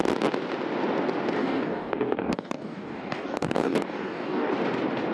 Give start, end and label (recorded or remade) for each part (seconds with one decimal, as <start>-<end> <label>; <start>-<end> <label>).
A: 0.0-1.4 recorded; 1.4-4.5 remade; 4.5-5.1 recorded